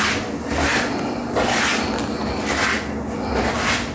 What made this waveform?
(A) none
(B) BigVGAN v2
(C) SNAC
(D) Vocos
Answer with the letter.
A